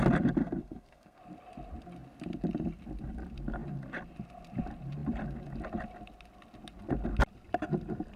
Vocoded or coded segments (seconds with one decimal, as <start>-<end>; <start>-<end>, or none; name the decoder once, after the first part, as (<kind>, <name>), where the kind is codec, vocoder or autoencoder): 0.4-1.2 (codec, SNAC)